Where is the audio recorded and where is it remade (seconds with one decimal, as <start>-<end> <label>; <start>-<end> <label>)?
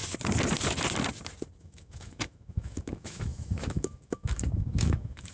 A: 0.0-1.6 recorded; 1.6-5.3 remade